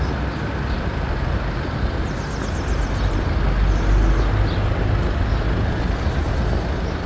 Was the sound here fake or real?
real